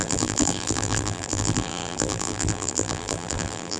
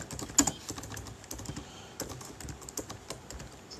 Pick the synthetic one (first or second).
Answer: first